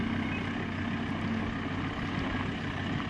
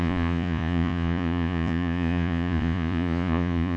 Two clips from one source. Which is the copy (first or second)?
second